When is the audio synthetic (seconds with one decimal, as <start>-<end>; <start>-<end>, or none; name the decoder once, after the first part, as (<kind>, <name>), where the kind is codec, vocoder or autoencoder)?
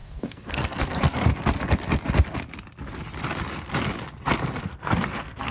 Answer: 0.0-1.3 (codec, SNAC); 4.6-5.5